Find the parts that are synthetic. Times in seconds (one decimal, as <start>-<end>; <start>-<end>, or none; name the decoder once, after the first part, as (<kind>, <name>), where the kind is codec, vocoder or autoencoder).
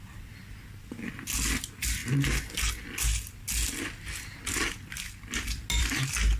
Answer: none